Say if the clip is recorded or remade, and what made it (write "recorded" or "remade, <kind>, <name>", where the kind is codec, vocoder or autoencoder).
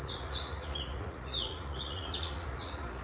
remade, vocoder, Vocos